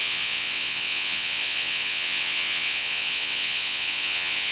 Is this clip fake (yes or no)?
yes